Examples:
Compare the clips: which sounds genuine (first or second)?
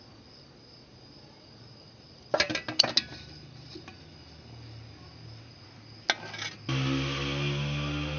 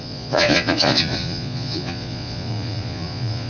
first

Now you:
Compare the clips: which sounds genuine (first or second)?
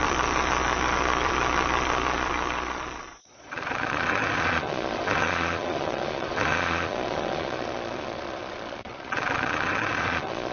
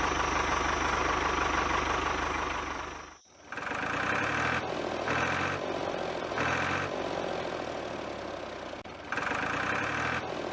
second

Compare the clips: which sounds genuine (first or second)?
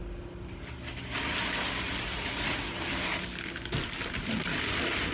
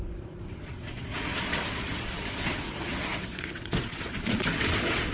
first